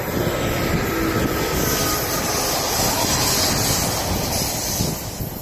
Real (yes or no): yes